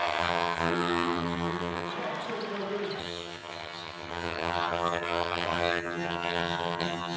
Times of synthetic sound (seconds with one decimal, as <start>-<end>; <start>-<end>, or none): 0.0-1.9; 3.0-7.2